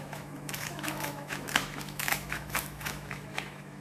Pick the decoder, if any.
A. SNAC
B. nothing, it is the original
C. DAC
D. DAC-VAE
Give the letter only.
D